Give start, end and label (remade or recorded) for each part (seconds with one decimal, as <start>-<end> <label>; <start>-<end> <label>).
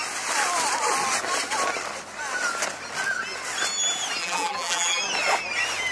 0.0-4.2 recorded; 4.2-5.0 remade; 5.0-5.9 recorded